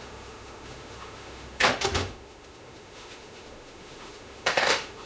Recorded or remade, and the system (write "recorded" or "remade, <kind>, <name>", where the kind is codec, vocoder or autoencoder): remade, autoencoder, DAC-VAE